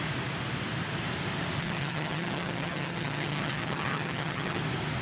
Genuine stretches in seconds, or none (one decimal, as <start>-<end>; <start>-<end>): 0.0-1.6; 4.6-5.0

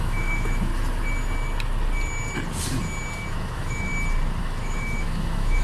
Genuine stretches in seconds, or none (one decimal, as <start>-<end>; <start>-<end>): 0.7-3.3; 3.9-4.4

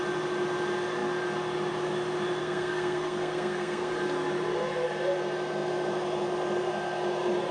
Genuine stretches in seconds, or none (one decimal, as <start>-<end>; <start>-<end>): 0.0-2.4; 3.9-7.5